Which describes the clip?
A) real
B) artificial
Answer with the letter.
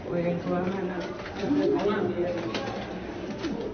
A